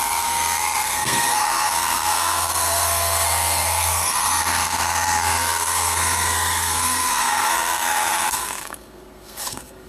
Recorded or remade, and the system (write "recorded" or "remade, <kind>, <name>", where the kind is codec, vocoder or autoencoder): remade, codec, SNAC